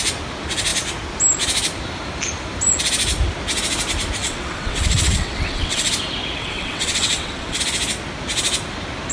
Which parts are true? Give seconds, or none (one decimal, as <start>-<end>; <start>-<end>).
0.0-4.2; 5.9-6.4; 7.6-9.1